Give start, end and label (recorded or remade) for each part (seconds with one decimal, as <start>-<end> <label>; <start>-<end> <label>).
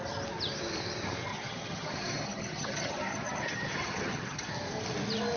0.0-1.3 recorded; 1.3-4.5 remade; 4.5-5.4 recorded